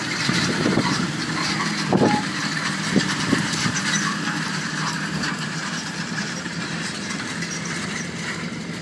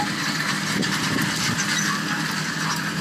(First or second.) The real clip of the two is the second